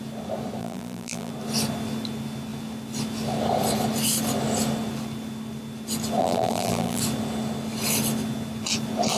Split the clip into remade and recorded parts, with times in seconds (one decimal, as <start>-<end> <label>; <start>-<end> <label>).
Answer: 0.0-0.6 recorded; 0.6-1.3 remade; 1.3-6.2 recorded; 6.2-7.0 remade; 7.0-9.2 recorded